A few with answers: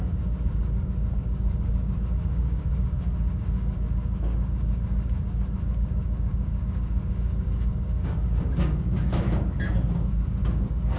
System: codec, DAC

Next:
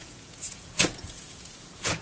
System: vocoder, Vocos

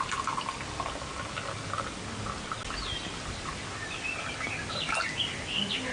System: none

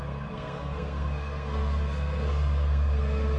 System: codec, SNAC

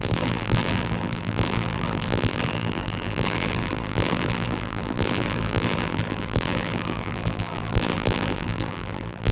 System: vocoder, BigVGAN v2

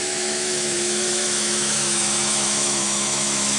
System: autoencoder, DAC-VAE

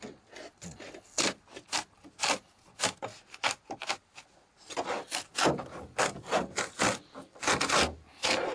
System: none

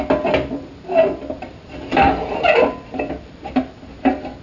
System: none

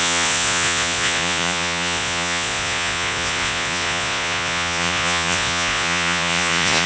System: vocoder, Vocos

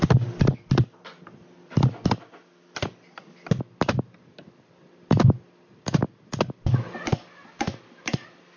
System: none